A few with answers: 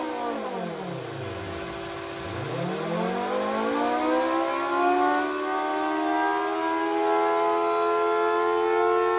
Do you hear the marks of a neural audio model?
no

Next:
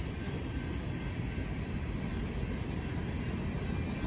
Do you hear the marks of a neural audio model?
no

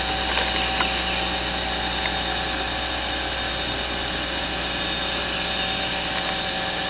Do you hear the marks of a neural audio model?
no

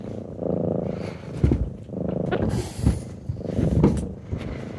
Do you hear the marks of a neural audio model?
no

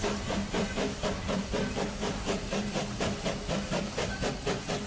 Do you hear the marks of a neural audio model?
no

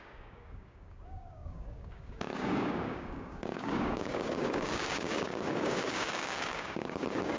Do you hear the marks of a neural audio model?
yes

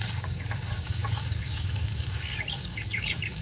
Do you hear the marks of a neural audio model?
yes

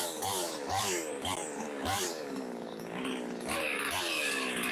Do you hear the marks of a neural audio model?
yes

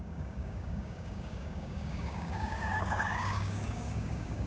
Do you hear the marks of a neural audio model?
yes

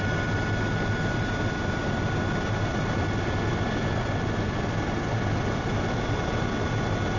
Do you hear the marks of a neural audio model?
no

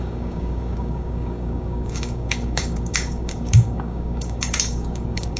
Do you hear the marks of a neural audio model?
yes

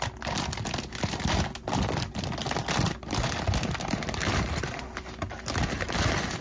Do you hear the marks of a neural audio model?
no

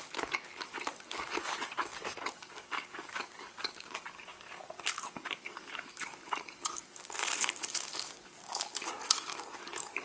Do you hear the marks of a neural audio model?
yes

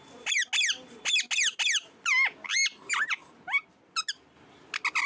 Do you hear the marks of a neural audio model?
no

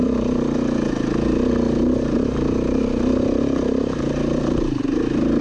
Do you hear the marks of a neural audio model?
no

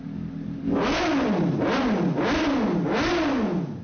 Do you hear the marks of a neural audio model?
no